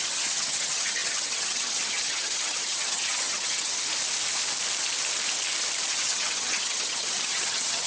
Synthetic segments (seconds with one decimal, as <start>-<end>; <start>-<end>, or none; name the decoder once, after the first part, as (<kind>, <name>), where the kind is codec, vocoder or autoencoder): 0.0-3.9 (vocoder, HiFi-GAN); 5.9-7.9